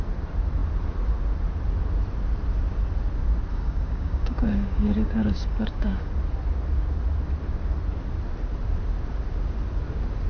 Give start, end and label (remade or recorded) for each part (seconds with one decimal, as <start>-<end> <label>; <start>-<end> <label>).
0.0-3.5 recorded; 3.5-6.1 remade; 6.1-10.3 recorded